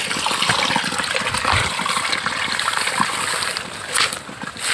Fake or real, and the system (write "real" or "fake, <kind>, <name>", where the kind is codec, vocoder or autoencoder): real